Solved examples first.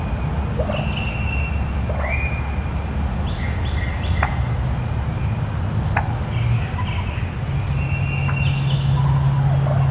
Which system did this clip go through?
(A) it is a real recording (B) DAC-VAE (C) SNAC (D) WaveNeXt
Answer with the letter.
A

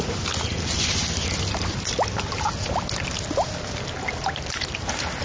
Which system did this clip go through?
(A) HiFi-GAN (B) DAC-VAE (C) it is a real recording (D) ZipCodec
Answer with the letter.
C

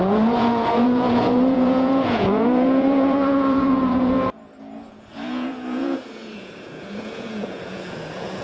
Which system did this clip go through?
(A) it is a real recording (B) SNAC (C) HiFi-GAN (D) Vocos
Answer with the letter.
D